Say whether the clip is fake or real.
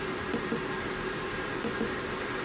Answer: real